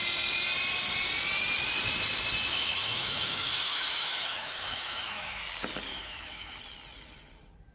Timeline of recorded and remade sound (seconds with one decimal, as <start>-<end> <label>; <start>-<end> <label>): 0.0-2.5 recorded; 2.5-5.4 remade; 5.4-5.9 recorded; 5.9-6.6 remade; 6.6-7.7 recorded